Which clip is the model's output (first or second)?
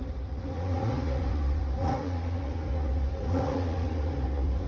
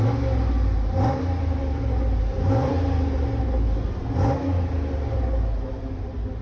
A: first